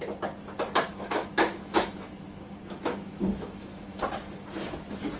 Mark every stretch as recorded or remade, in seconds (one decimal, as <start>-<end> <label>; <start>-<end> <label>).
0.0-0.9 recorded; 0.9-4.0 remade; 4.0-5.2 recorded